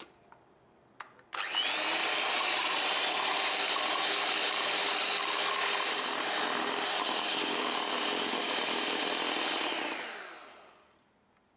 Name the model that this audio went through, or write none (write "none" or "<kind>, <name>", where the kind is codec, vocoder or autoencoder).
none